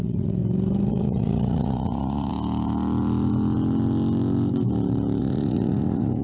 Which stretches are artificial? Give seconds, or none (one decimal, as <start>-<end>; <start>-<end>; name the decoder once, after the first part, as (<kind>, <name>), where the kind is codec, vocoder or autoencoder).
0.0-0.4 (vocoder, Vocos); 0.9-2.3; 5.2-6.2